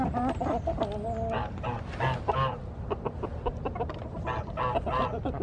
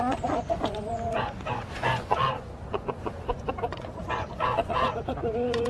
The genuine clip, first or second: first